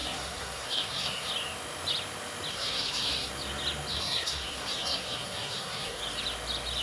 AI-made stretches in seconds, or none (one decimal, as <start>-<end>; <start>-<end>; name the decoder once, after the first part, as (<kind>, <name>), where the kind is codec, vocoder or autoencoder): 0.0-1.3 (codec, SNAC); 2.5-3.3; 3.9-6.0